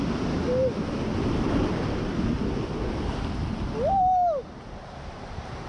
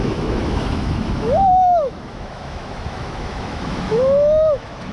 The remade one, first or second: second